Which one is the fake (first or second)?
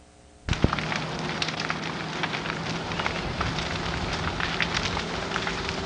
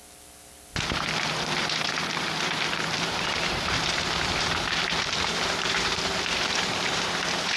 second